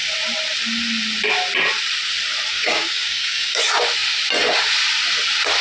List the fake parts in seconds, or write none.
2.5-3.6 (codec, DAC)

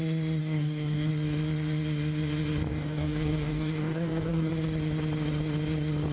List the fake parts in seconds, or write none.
0.4-1.1 (codec, DAC); 2.7-4.5

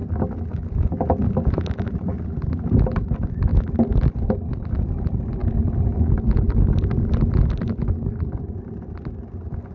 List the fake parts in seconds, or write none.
none

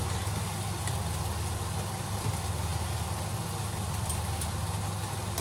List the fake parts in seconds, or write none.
none

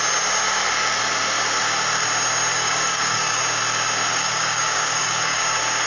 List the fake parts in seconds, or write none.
2.5-3.4 (codec, DAC); 4.1-5.4

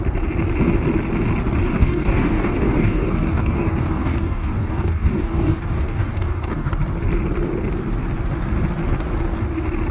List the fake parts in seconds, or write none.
1.6-6.7 (codec, DAC)

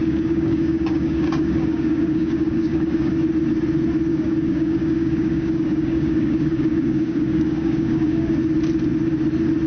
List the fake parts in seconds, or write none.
0.0-3.1 (codec, DAC); 4.1-8.3

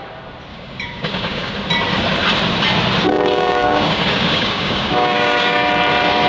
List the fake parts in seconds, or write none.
0.5-1.5 (codec, DAC); 3.1-5.7